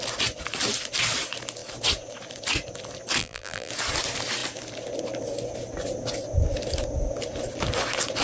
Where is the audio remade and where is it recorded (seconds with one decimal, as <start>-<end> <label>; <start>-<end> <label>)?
0.0-3.2 recorded; 3.2-3.7 remade; 3.7-8.2 recorded